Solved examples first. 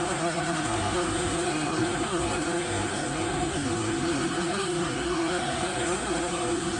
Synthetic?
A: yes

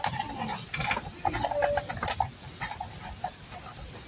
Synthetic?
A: no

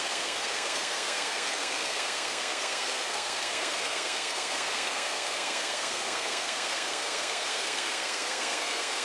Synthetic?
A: yes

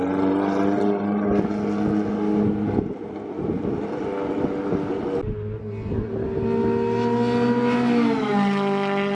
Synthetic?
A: no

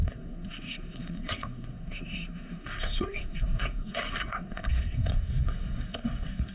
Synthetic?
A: yes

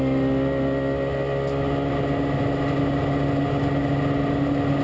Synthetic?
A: no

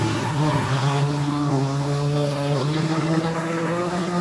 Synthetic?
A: yes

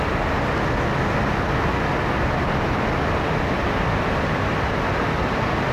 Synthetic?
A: no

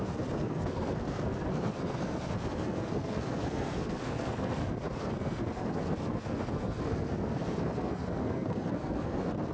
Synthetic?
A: yes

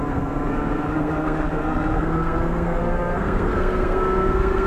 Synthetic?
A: yes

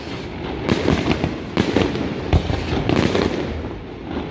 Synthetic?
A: no